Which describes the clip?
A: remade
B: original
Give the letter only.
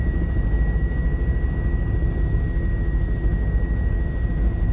B